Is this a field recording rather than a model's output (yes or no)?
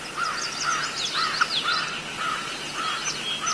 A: yes